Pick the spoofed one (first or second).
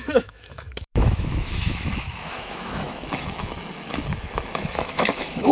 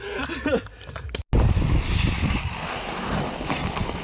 first